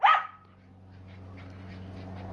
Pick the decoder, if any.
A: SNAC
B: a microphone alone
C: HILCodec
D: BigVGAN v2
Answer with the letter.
B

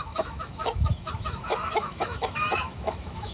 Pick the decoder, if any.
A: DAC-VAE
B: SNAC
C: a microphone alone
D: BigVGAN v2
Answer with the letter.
A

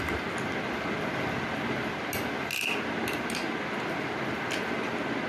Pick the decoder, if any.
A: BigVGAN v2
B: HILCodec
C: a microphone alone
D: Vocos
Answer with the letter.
C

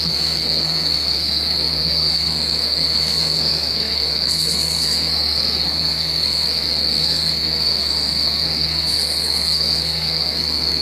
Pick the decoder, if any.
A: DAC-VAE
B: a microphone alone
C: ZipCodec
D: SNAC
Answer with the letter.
D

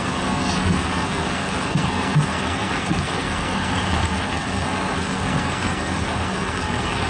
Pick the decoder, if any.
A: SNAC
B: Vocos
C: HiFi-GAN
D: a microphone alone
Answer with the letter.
A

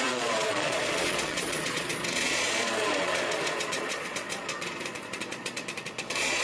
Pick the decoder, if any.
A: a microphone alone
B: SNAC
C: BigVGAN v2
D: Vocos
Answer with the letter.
D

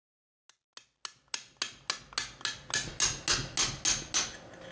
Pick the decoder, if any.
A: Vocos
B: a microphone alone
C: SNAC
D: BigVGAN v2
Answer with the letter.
B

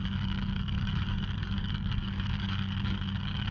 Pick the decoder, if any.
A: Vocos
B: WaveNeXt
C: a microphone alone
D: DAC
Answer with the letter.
D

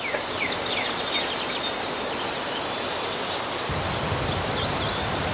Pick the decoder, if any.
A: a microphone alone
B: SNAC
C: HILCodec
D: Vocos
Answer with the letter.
A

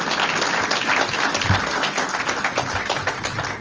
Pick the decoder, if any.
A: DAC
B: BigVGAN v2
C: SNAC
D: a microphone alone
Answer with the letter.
D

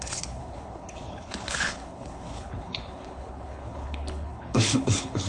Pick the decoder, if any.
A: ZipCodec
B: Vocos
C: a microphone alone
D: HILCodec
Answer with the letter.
D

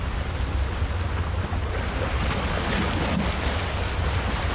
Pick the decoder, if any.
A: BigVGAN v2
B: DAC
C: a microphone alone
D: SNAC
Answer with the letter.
C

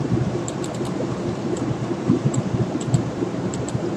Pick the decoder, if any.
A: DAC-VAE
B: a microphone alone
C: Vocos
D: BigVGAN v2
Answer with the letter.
D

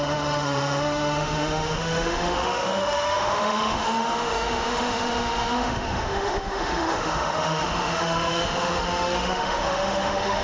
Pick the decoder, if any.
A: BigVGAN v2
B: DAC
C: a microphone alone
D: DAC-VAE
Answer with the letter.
D